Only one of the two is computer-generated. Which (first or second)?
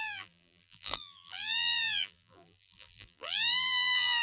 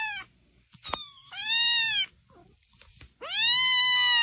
first